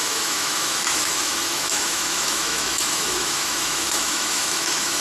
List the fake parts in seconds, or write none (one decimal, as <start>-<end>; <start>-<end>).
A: 0.0-5.0